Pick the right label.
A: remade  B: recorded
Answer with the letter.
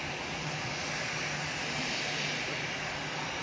B